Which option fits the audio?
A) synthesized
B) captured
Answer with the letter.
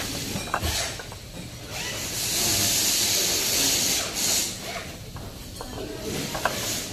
B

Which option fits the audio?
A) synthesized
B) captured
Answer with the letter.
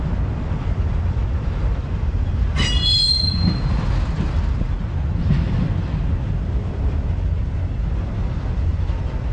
B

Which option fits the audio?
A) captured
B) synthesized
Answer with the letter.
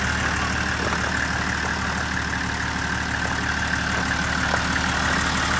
A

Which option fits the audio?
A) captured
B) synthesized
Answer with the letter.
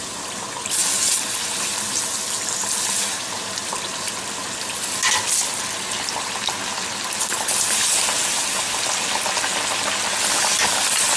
A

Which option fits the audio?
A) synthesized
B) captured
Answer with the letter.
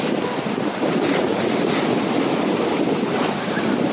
B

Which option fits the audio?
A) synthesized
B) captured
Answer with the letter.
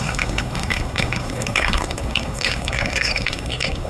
A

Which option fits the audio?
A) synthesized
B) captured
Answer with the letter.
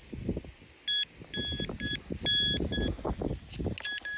B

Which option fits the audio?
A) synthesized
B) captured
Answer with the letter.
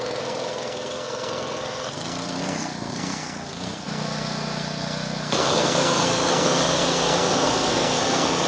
A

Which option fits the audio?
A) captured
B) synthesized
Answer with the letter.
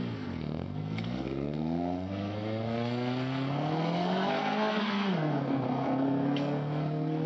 B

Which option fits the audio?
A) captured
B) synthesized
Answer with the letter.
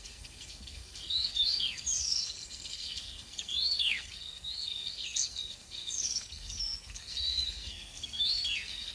B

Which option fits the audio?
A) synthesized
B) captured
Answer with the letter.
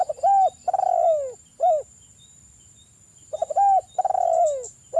B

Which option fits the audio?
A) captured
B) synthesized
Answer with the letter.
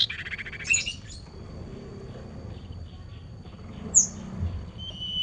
A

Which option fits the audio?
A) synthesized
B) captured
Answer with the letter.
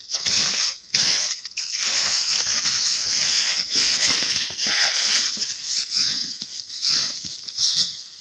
A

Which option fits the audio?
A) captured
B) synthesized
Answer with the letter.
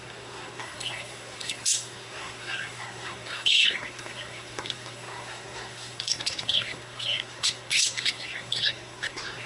B